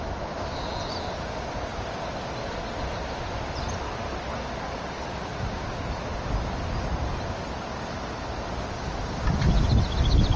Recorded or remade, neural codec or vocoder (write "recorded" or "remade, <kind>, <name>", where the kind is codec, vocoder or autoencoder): recorded